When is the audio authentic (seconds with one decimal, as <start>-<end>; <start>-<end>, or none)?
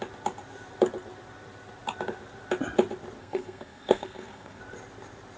0.0-3.2; 4.6-5.4